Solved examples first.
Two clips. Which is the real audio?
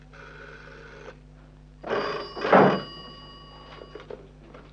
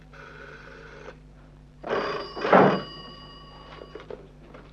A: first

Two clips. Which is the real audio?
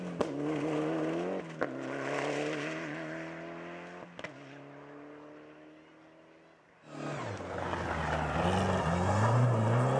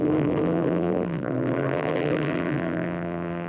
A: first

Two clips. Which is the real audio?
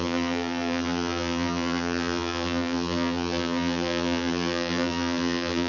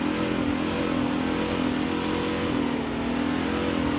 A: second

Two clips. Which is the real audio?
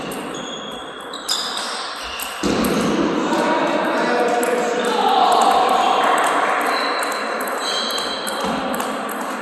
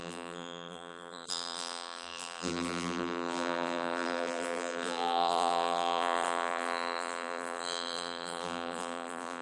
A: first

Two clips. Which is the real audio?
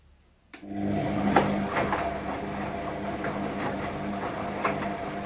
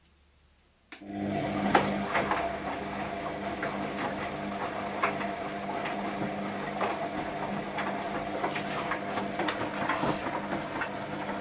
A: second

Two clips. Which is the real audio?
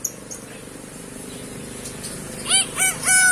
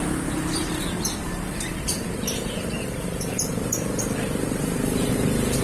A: first